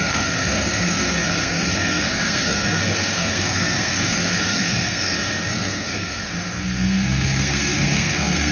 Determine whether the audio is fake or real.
fake